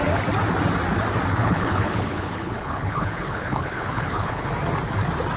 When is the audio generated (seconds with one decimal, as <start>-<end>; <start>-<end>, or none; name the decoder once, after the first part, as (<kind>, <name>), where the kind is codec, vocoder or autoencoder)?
1.3-4.5 (codec, HILCodec)